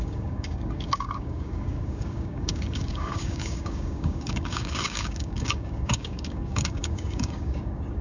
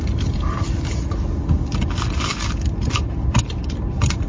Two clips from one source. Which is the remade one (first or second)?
first